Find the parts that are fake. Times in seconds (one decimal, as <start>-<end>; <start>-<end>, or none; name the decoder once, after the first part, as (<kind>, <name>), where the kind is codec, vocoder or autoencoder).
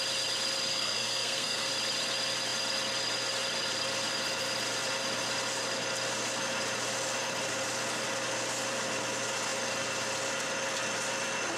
0.7-1.7 (codec, SNAC)